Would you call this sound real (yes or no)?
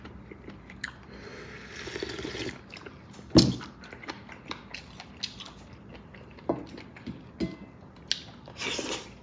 yes